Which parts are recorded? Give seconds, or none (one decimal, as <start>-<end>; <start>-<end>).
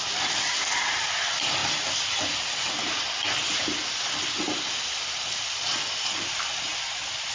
1.6-4.6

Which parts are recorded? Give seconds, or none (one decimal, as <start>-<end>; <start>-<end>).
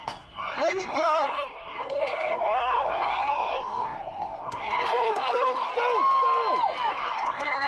5.7-6.9